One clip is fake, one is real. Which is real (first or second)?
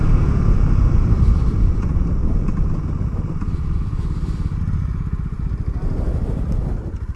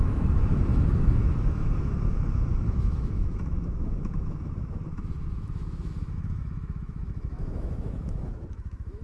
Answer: first